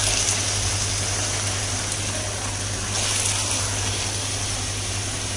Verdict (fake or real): real